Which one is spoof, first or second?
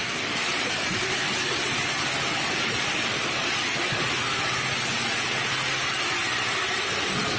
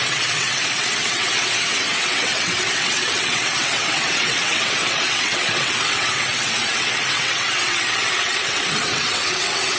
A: second